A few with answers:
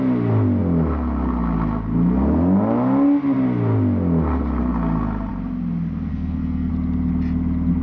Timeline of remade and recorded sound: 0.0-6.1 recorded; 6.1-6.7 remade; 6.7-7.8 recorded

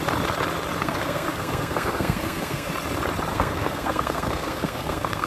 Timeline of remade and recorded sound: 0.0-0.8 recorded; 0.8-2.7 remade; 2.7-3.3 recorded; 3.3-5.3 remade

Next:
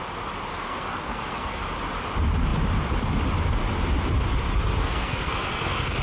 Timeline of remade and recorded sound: 0.0-0.5 recorded; 0.5-1.6 remade; 1.6-4.8 recorded; 4.8-6.0 remade

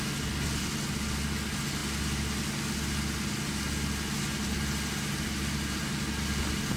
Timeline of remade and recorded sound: 0.0-6.8 recorded